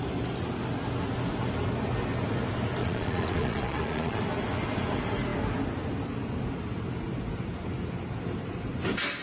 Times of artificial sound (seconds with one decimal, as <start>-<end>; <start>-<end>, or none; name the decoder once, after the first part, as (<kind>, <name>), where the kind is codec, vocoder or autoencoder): 2.8-4.2 (vocoder, Vocos)

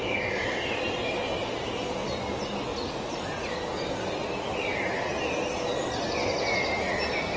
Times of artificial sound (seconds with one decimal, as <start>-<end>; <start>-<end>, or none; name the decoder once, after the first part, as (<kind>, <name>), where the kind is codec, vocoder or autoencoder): 2.7-3.5 (vocoder, Vocos)

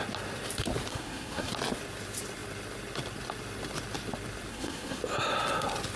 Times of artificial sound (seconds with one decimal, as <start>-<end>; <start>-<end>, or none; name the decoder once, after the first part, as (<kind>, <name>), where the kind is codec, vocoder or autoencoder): 0.9-1.5 (codec, SNAC); 4.5-5.0